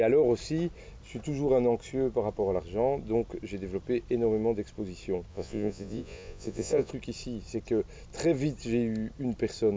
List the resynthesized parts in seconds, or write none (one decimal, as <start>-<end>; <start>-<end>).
5.3-6.9